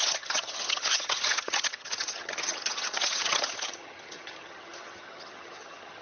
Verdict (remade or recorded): remade